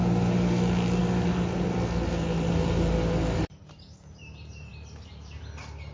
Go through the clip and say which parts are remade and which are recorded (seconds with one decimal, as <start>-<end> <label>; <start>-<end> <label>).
0.0-5.9 recorded